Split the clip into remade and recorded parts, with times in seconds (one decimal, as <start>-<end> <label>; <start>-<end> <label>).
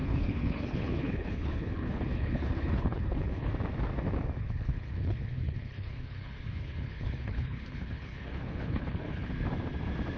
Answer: 0.0-3.5 remade; 3.5-4.4 recorded; 4.4-9.3 remade; 9.3-10.2 recorded